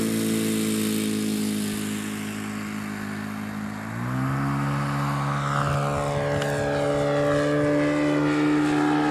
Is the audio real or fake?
real